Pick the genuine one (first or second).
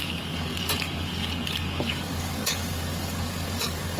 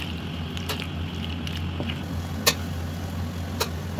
second